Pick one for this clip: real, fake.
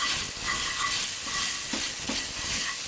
real